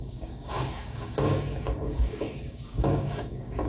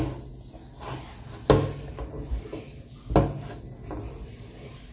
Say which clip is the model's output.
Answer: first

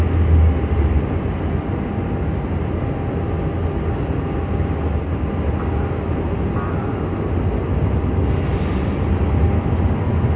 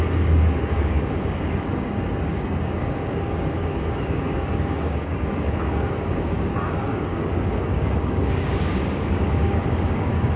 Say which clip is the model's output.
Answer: second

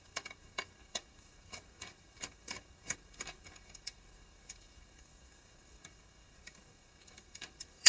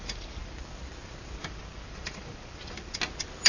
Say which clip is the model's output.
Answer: first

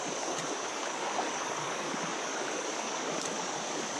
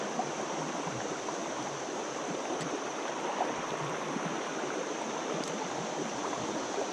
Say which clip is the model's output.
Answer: first